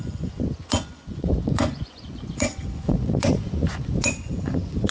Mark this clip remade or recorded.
remade